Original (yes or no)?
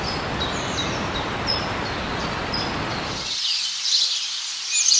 yes